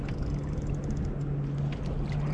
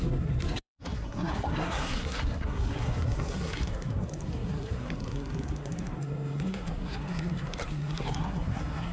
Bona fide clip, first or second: first